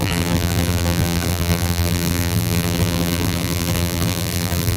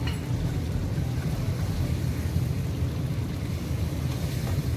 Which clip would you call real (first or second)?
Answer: second